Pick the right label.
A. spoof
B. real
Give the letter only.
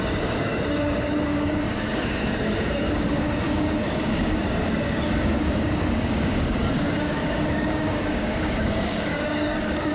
A